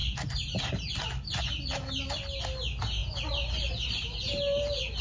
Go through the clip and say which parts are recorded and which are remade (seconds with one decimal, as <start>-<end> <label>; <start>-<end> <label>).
0.0-5.0 recorded